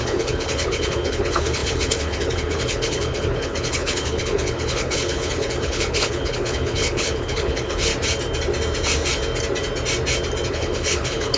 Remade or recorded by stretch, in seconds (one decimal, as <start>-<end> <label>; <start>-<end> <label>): 0.0-7.9 remade; 7.9-10.5 recorded; 10.5-11.4 remade